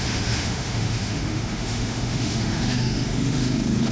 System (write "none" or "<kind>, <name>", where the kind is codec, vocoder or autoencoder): autoencoder, DAC-VAE